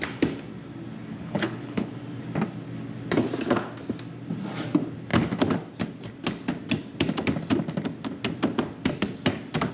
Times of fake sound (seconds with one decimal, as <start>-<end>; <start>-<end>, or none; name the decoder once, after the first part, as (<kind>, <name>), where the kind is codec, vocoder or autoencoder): 1.1-1.9 (codec, HILCodec)